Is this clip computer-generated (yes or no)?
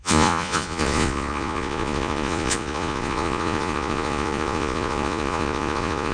yes